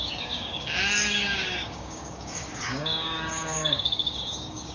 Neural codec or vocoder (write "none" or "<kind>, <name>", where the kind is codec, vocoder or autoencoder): codec, DAC